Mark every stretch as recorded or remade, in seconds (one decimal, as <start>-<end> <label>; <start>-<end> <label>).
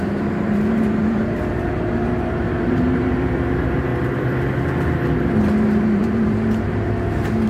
0.0-3.9 remade; 3.9-5.6 recorded; 5.6-7.5 remade